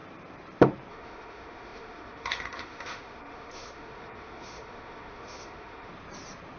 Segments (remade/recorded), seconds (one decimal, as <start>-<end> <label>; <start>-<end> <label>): 0.0-0.9 recorded; 0.9-5.9 remade; 5.9-6.6 recorded